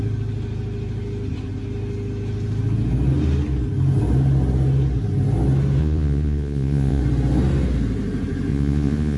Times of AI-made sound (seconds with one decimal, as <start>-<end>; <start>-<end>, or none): 5.8-7.0; 8.5-9.2